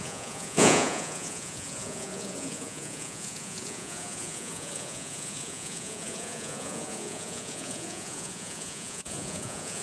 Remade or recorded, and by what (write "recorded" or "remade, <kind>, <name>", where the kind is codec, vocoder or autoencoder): remade, vocoder, Vocos